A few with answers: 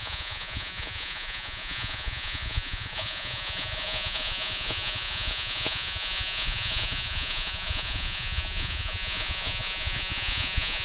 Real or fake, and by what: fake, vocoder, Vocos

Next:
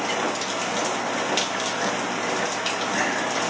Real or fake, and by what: real